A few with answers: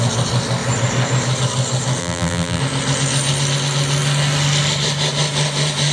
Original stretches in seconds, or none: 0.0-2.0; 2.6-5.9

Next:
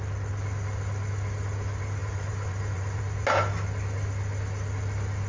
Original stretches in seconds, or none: 0.0-2.0; 3.0-5.3

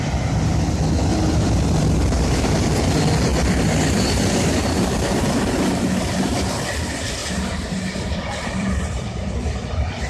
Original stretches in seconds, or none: 0.0-1.1; 2.5-3.3; 6.8-7.2; 9.5-10.1

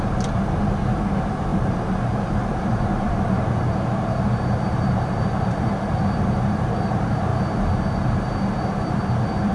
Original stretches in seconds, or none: 7.3-7.9